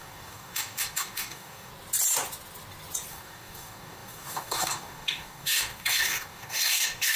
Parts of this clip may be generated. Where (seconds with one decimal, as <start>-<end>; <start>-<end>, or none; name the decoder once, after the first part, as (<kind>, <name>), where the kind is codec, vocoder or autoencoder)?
0.0-1.7 (codec, DAC); 3.1-7.2